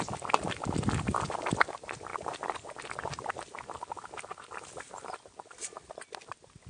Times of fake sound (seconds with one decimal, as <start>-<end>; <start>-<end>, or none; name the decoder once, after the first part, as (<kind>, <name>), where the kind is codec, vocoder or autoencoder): none